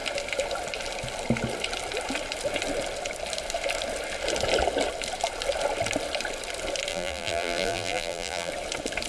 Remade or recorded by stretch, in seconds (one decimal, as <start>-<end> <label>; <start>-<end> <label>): 0.0-6.9 recorded; 6.9-8.5 remade; 8.5-9.1 recorded